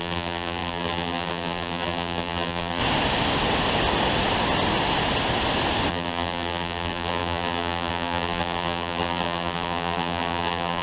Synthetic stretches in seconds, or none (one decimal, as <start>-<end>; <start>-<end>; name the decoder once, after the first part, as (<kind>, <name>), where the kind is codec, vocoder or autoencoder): 0.0-2.8 (vocoder, BigVGAN v2); 5.9-10.8